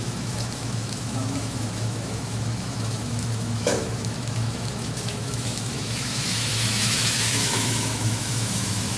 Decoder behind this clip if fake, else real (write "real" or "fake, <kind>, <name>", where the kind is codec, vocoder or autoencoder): fake, autoencoder, DAC-VAE